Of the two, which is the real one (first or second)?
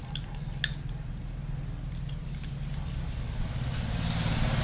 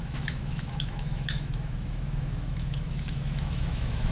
first